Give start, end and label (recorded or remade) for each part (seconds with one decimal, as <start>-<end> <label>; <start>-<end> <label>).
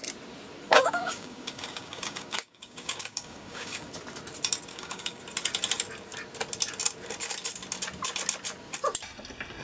0.0-0.7 recorded; 0.7-3.9 remade; 3.9-4.7 recorded; 4.7-5.2 remade; 5.2-9.6 recorded